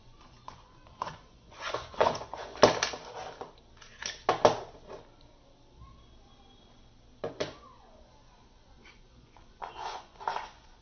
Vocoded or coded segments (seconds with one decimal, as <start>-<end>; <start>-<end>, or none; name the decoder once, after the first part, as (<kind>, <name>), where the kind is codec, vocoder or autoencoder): 0.0-2.5 (vocoder, Vocos); 7.3-10.8

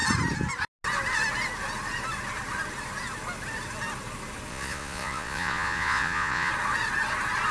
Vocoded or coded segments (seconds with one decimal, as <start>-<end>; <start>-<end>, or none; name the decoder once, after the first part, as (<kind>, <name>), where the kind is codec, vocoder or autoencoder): 4.5-6.5 (vocoder, Vocos)

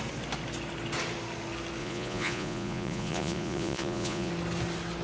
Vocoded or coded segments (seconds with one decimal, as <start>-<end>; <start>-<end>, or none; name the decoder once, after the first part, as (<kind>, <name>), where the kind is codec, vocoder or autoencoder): 1.8-4.3 (vocoder, Vocos)

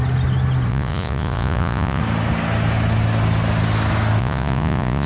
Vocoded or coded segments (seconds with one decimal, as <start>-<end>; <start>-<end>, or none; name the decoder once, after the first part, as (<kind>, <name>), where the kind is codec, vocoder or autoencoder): 0.7-2.0 (vocoder, Vocos); 4.2-5.1